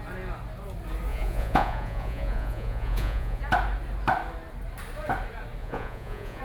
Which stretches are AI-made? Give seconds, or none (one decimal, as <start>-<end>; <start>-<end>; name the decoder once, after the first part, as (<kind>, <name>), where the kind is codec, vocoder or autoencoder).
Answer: 1.1-3.4 (vocoder, Vocos); 5.6-6.4